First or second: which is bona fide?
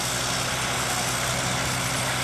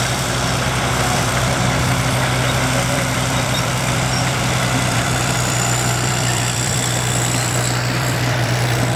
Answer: first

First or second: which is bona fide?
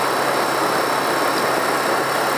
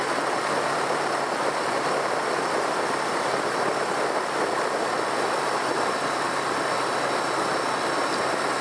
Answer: first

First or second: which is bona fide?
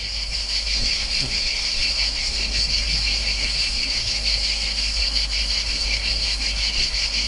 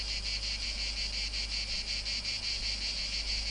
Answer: second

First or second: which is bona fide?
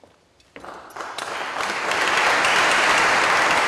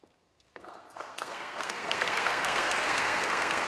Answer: first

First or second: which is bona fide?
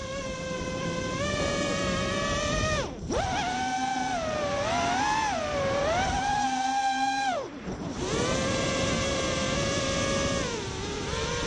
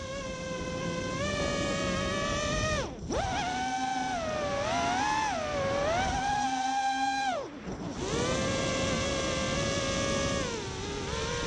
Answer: second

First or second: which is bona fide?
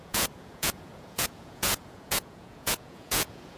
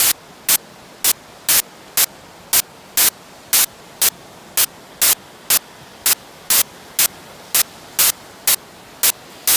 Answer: second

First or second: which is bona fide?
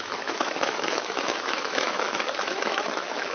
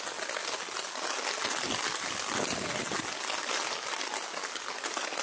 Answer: second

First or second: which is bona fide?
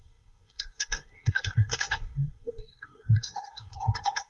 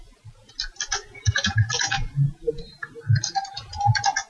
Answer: second